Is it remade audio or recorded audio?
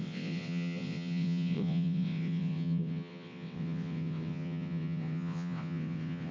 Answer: remade